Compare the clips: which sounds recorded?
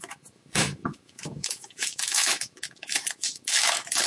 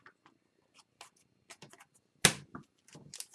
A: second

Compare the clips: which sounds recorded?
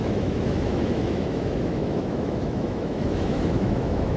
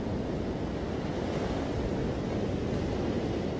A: second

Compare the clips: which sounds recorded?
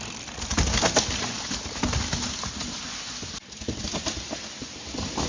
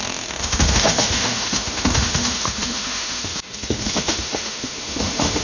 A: first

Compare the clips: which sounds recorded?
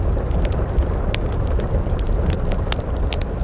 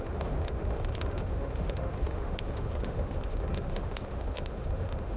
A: first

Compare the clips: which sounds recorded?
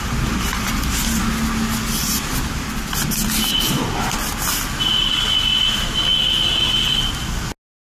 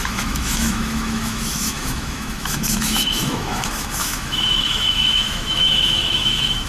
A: first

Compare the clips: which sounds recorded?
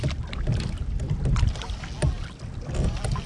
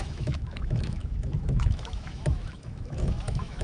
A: first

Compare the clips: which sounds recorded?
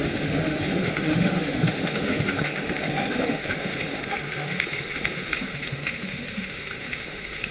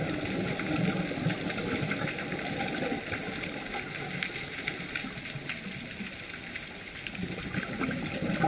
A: second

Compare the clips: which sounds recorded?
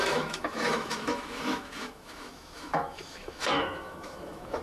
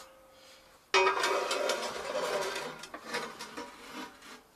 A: second